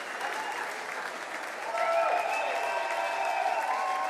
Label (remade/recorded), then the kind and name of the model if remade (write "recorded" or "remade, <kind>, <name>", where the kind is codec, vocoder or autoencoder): recorded